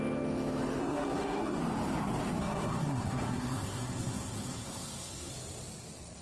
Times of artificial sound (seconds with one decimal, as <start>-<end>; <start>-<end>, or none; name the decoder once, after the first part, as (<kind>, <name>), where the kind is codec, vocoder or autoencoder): 0.8-1.6 (codec, SNAC); 2.4-5.3